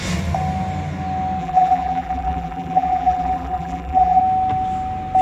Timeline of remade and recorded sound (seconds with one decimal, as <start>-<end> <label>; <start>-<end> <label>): 0.0-1.4 recorded; 1.4-4.2 remade; 4.2-5.2 recorded

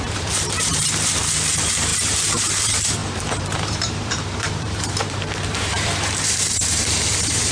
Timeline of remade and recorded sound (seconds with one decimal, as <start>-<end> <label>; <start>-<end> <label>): 0.0-7.5 remade

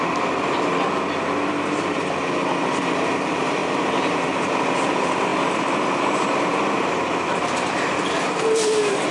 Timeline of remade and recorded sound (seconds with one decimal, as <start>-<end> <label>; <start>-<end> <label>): 0.0-3.6 remade; 3.6-4.4 recorded; 4.4-9.1 remade

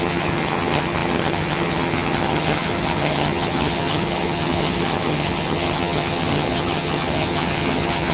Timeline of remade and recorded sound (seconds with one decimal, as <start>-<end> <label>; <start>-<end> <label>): 0.0-8.1 remade

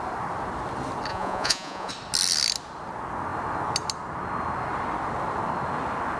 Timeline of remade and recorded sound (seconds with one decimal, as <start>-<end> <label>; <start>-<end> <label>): 0.0-1.1 recorded; 1.1-1.9 remade; 1.9-6.2 recorded

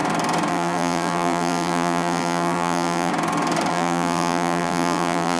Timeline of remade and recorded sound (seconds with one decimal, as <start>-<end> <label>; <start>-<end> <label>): 0.0-0.5 recorded; 0.5-3.1 remade; 3.1-3.7 recorded; 3.7-5.4 remade

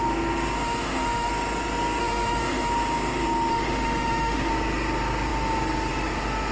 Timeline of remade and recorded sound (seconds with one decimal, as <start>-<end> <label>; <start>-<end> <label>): 0.0-0.6 recorded; 0.6-1.3 remade; 1.3-2.0 recorded; 2.0-2.7 remade; 2.7-3.5 recorded; 3.5-4.5 remade; 4.5-6.5 recorded

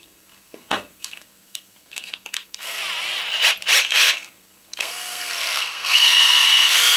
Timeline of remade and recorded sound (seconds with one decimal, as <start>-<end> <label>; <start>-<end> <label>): 0.0-2.8 remade; 2.8-3.8 recorded; 3.8-7.0 remade